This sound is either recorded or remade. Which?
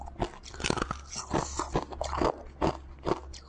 recorded